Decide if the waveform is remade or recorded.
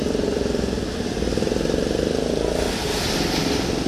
recorded